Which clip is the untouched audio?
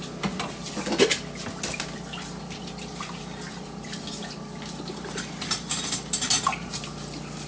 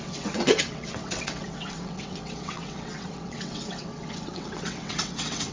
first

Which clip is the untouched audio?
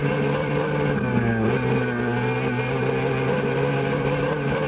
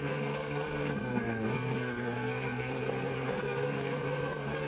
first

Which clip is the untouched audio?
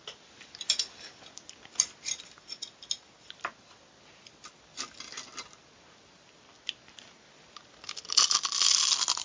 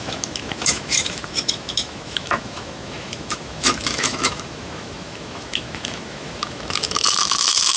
first